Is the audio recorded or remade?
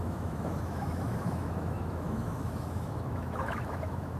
remade